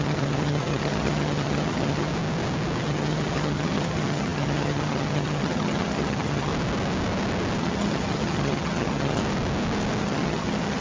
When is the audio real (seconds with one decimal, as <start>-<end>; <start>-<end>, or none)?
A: 2.1-2.8; 6.5-7.6; 9.2-10.0